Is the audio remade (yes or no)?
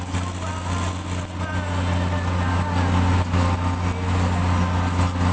no